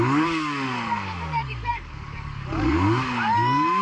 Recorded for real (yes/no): no